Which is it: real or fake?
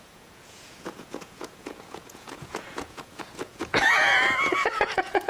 fake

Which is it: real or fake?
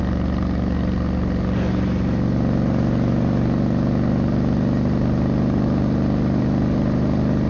real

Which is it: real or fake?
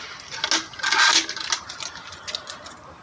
real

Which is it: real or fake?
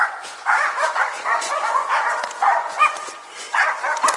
fake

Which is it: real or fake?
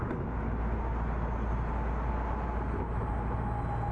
real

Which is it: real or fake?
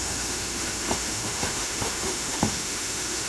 fake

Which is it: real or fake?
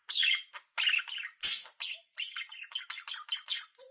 real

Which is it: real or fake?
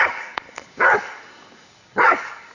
fake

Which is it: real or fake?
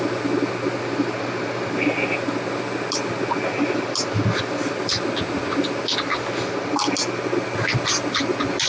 real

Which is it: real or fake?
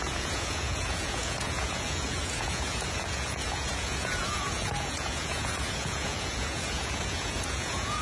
fake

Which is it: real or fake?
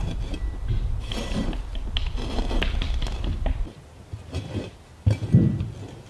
real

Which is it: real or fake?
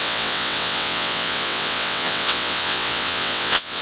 fake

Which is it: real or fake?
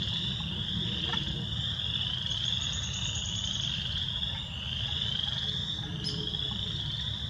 real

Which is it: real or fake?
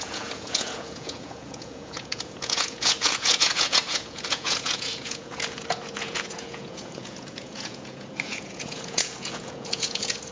fake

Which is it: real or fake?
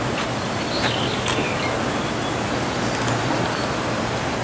real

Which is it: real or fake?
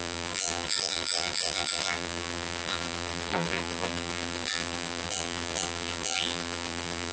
fake